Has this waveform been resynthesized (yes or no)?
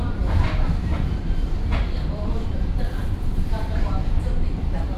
yes